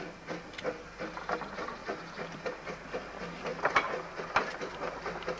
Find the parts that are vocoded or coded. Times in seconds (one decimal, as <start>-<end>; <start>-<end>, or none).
none